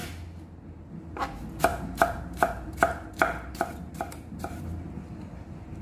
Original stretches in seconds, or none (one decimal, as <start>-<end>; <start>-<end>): 0.0-1.7; 4.6-5.8